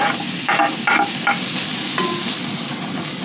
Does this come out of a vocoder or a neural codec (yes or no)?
no